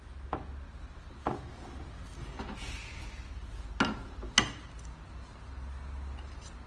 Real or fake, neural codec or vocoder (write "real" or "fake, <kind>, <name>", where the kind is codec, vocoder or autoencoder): real